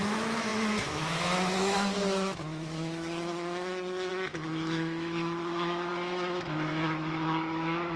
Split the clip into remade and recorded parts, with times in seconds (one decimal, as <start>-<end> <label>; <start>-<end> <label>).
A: 0.0-8.0 remade

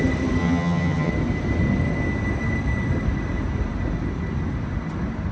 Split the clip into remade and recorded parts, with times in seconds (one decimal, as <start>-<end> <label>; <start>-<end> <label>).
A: 0.0-0.4 recorded; 0.4-1.1 remade; 1.1-5.3 recorded

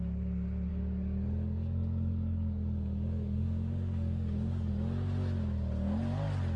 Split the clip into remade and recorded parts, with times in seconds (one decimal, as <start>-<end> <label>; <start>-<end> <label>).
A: 0.0-0.7 recorded; 0.7-4.7 remade; 4.7-6.6 recorded

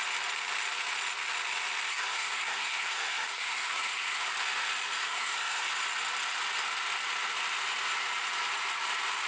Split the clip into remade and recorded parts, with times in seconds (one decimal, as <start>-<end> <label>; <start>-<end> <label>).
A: 0.0-1.9 recorded; 1.9-4.3 remade; 4.3-5.0 recorded; 5.0-5.7 remade; 5.7-9.3 recorded

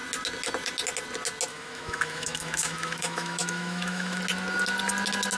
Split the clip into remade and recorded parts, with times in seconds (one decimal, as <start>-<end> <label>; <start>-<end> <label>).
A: 0.0-1.5 recorded; 1.5-4.2 remade; 4.2-5.4 recorded

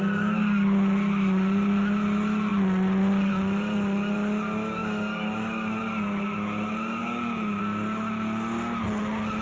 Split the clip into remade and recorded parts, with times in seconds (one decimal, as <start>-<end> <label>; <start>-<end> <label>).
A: 0.0-7.0 recorded; 7.0-7.6 remade; 7.6-9.4 recorded

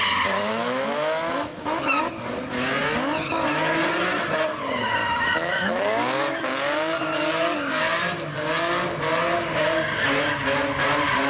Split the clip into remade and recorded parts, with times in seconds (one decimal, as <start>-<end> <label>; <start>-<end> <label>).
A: 0.0-0.5 recorded; 0.5-2.0 remade; 2.0-5.0 recorded; 5.0-5.8 remade; 5.8-11.3 recorded

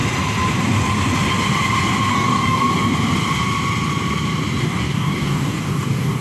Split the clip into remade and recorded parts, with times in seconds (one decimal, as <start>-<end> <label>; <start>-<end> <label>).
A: 0.0-2.1 recorded; 2.1-2.7 remade; 2.7-4.6 recorded; 4.6-6.2 remade